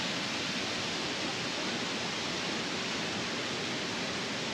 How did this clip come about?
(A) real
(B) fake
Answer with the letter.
A